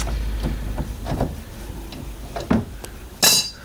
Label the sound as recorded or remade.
recorded